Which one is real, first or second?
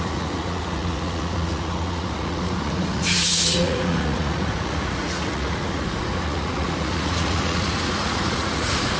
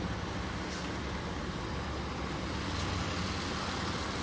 second